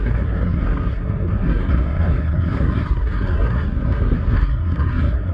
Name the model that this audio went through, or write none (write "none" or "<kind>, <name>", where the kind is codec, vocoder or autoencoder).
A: codec, SNAC